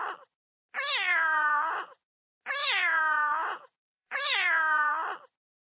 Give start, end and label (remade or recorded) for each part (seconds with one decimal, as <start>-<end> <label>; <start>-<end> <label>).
0.0-1.1 recorded; 1.1-2.2 remade; 2.2-2.6 recorded; 2.6-4.9 remade; 4.9-5.7 recorded